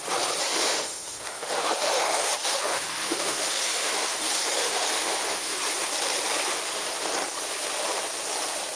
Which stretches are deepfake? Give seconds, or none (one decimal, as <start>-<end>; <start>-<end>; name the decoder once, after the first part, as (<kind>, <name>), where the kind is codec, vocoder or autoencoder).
0.5-5.6 (autoencoder, DAC-VAE)